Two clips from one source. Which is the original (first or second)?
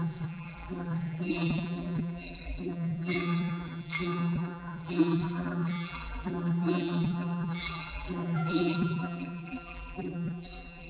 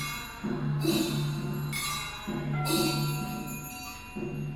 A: second